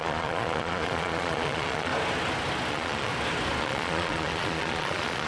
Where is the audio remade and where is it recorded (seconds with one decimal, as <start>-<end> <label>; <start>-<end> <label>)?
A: 0.0-1.9 remade; 1.9-2.7 recorded; 2.7-3.1 remade; 3.1-3.6 recorded; 3.6-5.3 remade